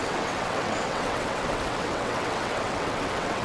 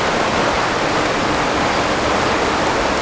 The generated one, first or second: first